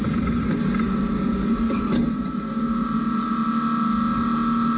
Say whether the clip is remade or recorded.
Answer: recorded